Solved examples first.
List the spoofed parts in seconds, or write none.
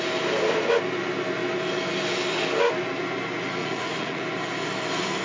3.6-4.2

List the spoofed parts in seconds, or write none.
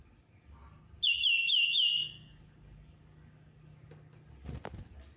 1.4-2.4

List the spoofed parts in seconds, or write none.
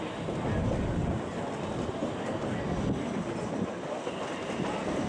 none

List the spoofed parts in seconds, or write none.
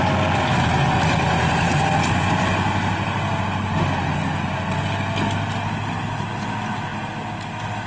none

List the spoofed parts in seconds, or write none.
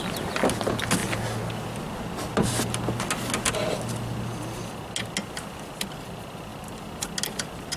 none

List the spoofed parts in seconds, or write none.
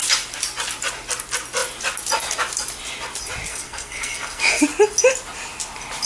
3.5-4.6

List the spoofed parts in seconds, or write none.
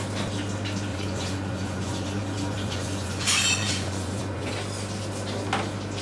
0.9-4.5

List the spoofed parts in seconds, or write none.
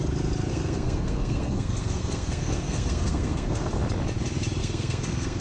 0.5-3.7; 4.6-5.4